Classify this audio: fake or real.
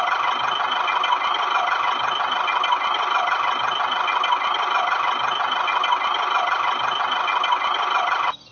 real